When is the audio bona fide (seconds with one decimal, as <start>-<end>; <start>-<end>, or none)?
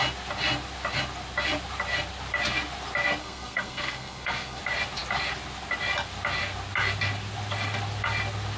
0.0-3.2; 4.6-8.6